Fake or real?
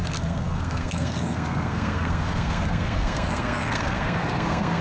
fake